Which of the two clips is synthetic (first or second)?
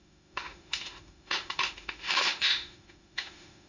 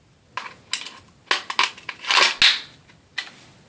first